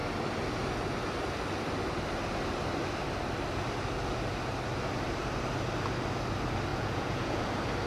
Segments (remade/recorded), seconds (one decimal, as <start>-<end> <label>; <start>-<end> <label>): 0.0-6.7 recorded; 6.7-7.4 remade; 7.4-7.9 recorded